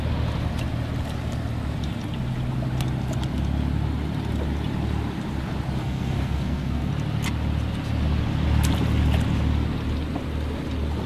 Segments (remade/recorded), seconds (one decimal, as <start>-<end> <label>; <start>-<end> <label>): 0.0-5.8 recorded; 5.8-6.9 remade; 6.9-11.1 recorded